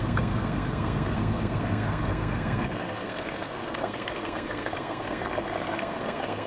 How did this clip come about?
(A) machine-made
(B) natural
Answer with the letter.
A